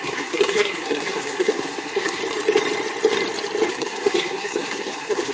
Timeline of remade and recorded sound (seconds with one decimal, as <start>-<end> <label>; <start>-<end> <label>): 0.0-2.2 remade; 2.2-3.7 recorded; 3.7-5.3 remade